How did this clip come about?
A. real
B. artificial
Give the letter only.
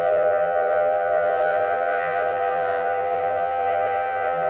B